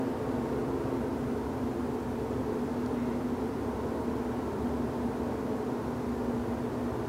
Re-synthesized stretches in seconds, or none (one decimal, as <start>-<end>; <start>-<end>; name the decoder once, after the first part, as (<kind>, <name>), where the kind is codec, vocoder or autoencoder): none